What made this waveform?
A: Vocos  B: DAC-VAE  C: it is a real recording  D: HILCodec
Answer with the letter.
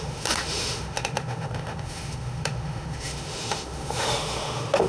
B